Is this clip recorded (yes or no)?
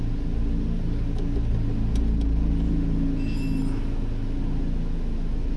yes